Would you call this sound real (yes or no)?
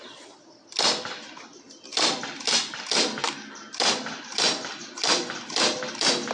yes